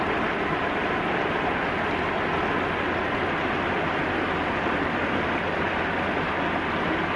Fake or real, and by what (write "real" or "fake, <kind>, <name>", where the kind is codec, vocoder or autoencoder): real